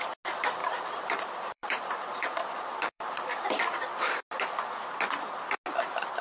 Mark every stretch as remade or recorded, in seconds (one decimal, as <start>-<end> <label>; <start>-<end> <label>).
0.0-0.6 recorded; 0.6-3.6 remade; 3.6-6.2 recorded